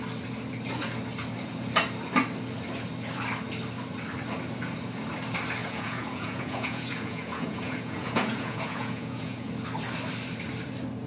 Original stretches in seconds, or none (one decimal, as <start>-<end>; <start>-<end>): 0.0-5.6; 9.5-11.1